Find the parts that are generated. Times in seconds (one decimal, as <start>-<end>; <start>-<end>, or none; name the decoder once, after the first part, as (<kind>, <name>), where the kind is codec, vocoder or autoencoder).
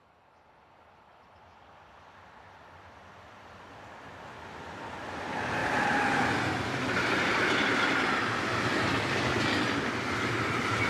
none